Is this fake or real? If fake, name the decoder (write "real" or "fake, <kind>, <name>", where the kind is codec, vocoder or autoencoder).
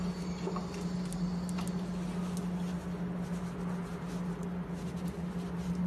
real